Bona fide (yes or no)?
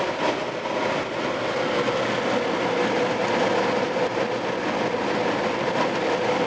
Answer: yes